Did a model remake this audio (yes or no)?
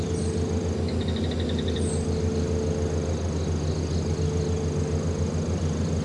no